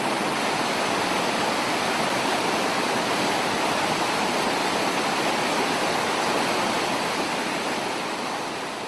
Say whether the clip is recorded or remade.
recorded